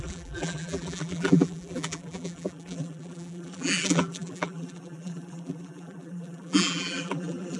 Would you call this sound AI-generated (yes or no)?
yes